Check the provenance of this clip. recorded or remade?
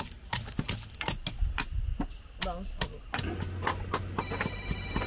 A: recorded